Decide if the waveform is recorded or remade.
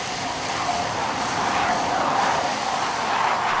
recorded